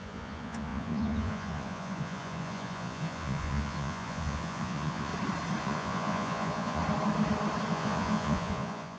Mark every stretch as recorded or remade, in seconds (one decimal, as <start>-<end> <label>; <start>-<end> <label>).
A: 0.0-5.1 remade; 5.1-5.6 recorded; 5.6-6.8 remade; 6.8-7.7 recorded; 7.7-9.0 remade